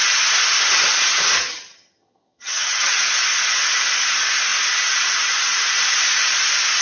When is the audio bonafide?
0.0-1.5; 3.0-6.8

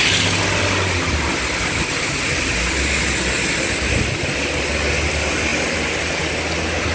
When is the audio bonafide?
0.0-6.9

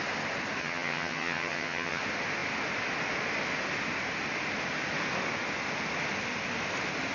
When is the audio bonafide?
0.0-0.6; 2.0-7.1

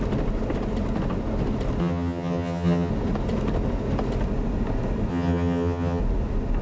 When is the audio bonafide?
0.0-1.8; 2.9-5.1; 6.0-6.6